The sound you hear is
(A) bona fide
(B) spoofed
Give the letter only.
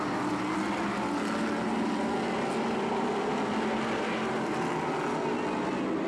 A